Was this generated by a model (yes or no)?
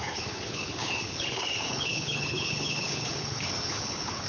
yes